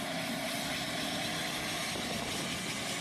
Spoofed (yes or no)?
no